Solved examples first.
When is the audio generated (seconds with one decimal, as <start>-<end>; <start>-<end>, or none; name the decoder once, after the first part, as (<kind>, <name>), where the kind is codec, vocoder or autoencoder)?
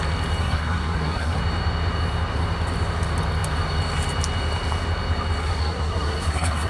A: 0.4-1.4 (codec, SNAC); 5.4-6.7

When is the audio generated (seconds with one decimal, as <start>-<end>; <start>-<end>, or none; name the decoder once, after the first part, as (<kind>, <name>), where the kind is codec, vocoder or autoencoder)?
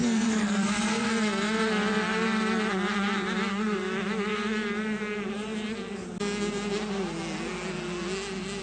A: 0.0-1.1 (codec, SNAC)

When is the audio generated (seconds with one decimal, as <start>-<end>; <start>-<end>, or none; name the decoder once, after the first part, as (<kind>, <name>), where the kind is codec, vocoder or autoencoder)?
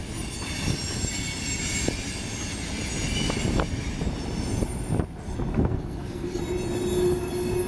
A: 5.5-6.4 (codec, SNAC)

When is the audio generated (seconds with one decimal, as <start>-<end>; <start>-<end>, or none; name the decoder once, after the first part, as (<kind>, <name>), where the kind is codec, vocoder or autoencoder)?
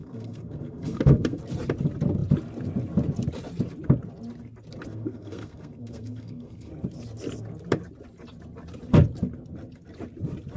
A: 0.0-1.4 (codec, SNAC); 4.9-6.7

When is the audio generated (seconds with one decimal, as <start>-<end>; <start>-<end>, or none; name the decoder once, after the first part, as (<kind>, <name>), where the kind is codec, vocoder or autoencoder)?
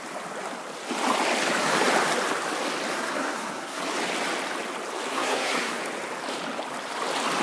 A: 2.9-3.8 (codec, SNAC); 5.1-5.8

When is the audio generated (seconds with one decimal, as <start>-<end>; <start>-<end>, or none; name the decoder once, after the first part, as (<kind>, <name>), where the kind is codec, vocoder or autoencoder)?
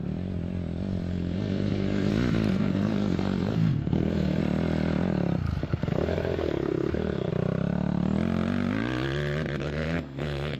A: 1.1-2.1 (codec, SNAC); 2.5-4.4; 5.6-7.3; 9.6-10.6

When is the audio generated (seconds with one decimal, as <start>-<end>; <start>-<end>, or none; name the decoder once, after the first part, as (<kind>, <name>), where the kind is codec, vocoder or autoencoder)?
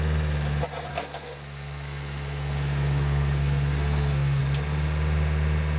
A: 0.9-4.4 (codec, SNAC)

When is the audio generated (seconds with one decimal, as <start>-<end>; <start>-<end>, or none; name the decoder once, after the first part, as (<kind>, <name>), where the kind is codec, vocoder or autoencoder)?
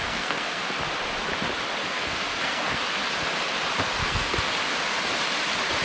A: 0.0-0.6 (codec, SNAC); 1.8-2.8; 4.0-4.5